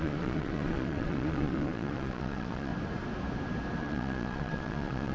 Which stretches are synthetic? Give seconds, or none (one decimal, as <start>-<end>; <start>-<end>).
0.0-2.7; 3.8-5.1